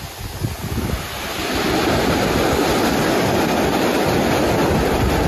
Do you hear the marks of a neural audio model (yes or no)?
no